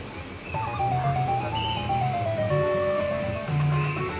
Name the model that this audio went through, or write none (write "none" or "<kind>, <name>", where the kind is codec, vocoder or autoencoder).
none